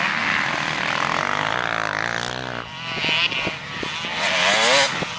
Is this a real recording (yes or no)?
yes